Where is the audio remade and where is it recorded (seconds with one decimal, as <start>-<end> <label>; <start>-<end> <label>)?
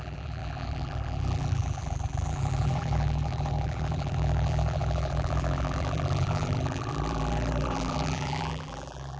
0.0-9.2 remade